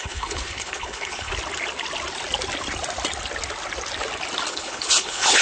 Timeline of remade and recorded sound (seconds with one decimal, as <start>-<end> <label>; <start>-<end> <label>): 0.0-1.3 remade; 1.3-4.5 recorded; 4.5-5.4 remade